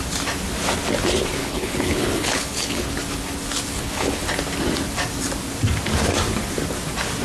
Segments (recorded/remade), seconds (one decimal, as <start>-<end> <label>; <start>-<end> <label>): 0.0-1.4 recorded; 1.4-2.9 remade; 2.9-3.7 recorded; 3.7-4.3 remade; 4.3-7.2 recorded